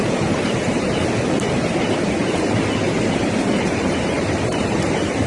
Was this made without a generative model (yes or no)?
no